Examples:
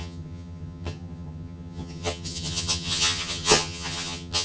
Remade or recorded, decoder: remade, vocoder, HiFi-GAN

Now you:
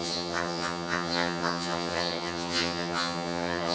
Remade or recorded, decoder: remade, vocoder, HiFi-GAN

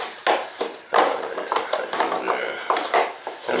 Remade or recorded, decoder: recorded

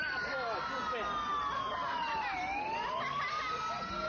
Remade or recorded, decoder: recorded